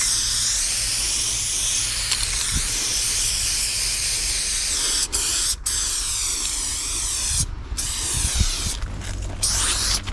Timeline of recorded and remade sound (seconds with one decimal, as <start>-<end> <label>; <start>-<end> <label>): 0.0-10.1 recorded